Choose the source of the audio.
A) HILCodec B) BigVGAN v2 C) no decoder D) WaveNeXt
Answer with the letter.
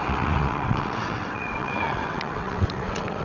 D